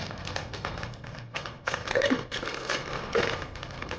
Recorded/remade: remade